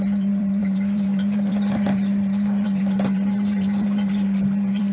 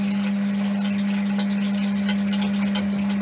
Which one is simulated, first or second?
first